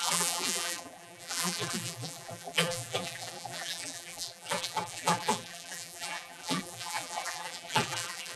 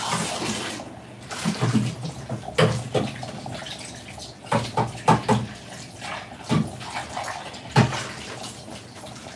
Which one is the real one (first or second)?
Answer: second